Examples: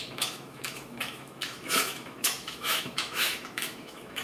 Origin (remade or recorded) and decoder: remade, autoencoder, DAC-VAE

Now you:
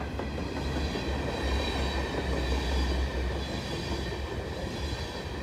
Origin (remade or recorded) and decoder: recorded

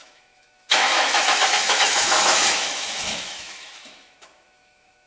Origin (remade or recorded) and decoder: remade, autoencoder, DAC-VAE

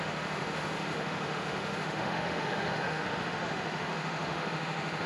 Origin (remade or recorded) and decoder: remade, autoencoder, DAC-VAE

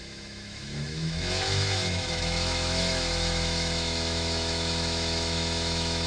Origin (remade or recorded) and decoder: remade, autoencoder, DAC-VAE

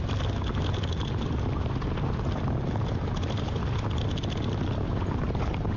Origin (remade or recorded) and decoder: recorded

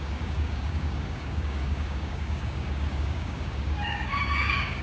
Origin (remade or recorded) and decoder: remade, codec, DAC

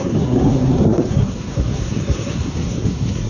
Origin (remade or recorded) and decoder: remade, codec, SNAC